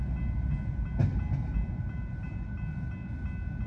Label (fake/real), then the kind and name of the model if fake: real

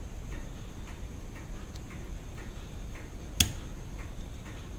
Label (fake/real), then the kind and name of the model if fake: real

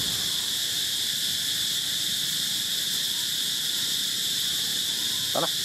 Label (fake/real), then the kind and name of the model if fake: real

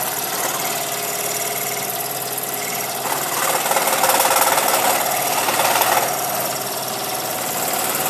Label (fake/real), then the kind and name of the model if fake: real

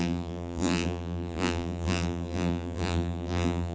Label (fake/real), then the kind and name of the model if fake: fake, vocoder, BigVGAN v2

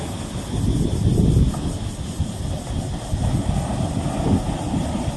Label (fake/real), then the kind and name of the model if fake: real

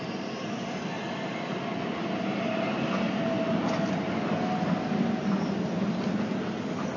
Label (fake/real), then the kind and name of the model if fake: real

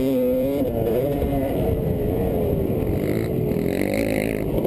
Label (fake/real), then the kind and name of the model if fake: fake, vocoder, BigVGAN v2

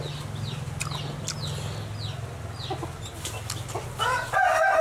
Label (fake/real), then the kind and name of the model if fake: real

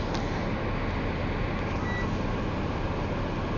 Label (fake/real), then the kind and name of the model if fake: real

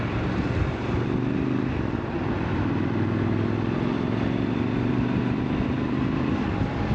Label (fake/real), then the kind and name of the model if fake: fake, vocoder, BigVGAN v2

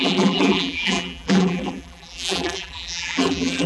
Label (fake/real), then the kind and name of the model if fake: fake, vocoder, BigVGAN v2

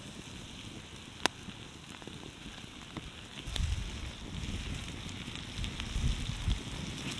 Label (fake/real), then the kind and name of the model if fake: real